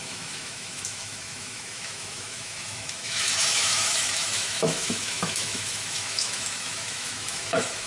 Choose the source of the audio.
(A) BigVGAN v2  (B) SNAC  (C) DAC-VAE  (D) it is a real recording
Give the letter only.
C